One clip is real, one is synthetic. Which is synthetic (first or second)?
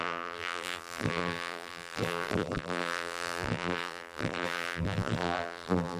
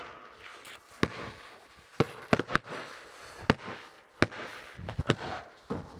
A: first